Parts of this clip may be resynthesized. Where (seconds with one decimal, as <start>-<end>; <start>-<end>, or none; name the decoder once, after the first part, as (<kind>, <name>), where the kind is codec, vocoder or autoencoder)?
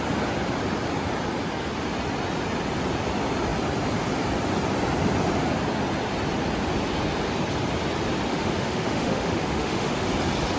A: 8.3-10.1 (autoencoder, DAC-VAE)